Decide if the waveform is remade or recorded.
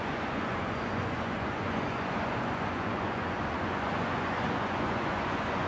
remade